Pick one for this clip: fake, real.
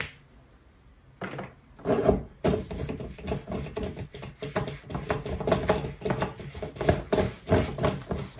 real